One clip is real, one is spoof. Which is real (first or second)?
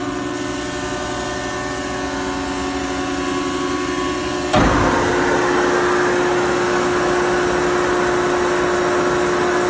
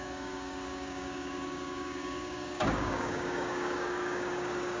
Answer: first